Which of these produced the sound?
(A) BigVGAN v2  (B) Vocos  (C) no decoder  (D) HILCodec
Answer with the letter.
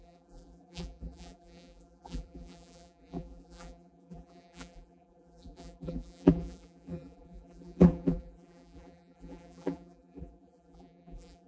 A